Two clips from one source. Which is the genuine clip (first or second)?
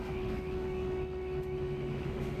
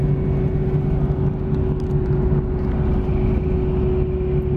second